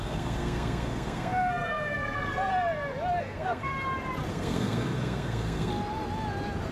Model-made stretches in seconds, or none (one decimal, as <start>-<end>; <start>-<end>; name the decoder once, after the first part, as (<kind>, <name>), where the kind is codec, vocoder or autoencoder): 0.0-2.5 (codec, SNAC); 3.2-3.7; 4.3-5.7